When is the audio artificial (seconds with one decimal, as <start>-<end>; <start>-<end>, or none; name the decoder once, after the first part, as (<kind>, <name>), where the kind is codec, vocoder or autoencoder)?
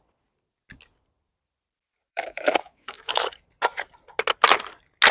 2.1-3.2 (autoencoder, DAC-VAE)